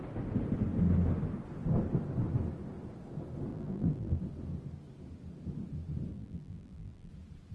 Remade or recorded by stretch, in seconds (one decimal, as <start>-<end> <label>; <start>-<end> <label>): 0.0-3.5 recorded; 3.5-4.2 remade; 4.2-6.1 recorded; 6.1-7.1 remade; 7.1-7.5 recorded